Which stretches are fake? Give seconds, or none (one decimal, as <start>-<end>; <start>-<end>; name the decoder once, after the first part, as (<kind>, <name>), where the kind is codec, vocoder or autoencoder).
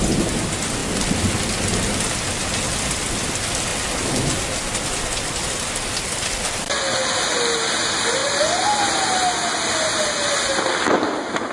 none